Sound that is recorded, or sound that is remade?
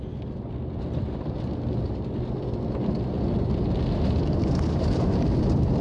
recorded